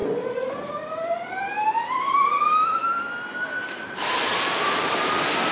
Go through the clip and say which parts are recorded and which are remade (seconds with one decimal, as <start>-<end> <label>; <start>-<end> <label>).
0.0-5.5 recorded